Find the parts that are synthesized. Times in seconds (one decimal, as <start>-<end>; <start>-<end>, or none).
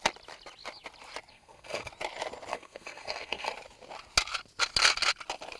1.3-1.9; 2.5-3.5